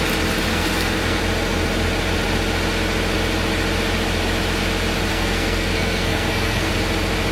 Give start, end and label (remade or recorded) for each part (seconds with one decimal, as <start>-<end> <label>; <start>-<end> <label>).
0.0-0.5 recorded; 0.5-1.2 remade; 1.2-5.1 recorded; 5.1-6.7 remade; 6.7-7.3 recorded